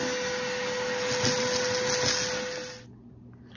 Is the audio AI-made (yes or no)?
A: no